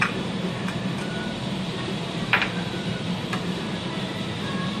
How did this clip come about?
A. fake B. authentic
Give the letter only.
A